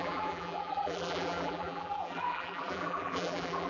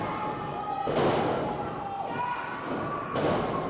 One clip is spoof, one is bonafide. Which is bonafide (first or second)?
second